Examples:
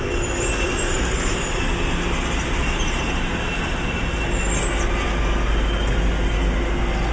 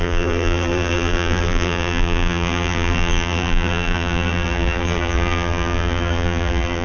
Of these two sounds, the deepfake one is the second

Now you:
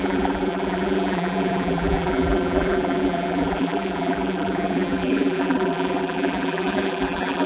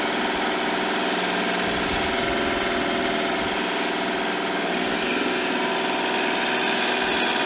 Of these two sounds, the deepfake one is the first